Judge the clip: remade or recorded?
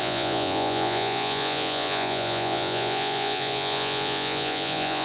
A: remade